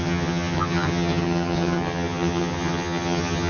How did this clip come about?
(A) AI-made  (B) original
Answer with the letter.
A